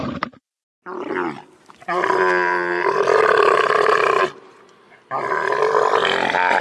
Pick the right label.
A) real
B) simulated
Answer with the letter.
A